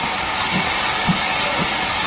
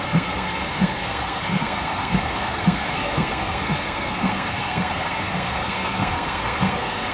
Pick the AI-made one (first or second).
second